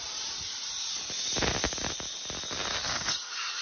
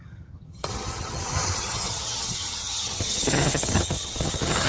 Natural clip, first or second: first